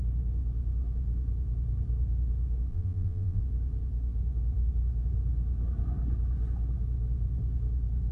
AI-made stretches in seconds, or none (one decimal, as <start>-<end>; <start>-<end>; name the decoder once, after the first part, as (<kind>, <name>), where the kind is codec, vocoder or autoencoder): 2.7-3.4 (vocoder, BigVGAN v2)